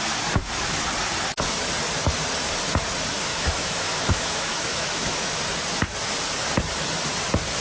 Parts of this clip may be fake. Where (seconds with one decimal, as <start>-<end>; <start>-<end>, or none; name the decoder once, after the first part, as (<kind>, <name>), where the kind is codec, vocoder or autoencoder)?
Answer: 3.3-5.4 (autoencoder, DAC-VAE)